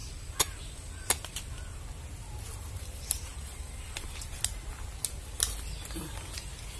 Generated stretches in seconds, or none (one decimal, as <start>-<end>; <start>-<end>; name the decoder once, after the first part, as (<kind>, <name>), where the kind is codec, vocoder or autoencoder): none